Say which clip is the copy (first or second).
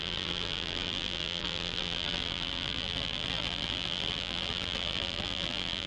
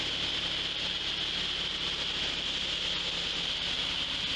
first